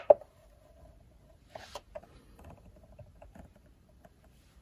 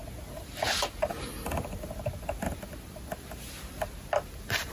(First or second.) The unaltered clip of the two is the second